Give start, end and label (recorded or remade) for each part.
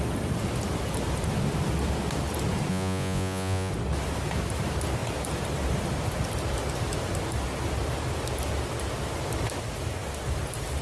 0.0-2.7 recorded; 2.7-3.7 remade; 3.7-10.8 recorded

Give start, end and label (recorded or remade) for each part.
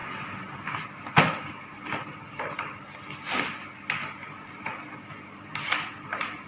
0.0-6.5 recorded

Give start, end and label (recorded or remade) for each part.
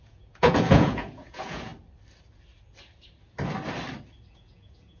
0.0-1.7 remade; 1.7-4.3 recorded; 4.3-5.0 remade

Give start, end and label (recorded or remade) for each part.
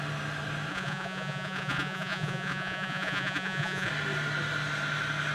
0.0-0.7 recorded; 0.7-3.9 remade; 3.9-5.3 recorded